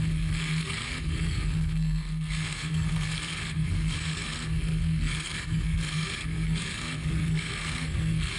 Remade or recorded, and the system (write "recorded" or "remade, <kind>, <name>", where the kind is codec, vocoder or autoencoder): remade, codec, SNAC